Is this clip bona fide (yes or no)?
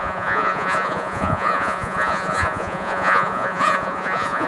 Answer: no